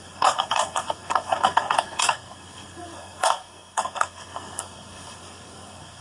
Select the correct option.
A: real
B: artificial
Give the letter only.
B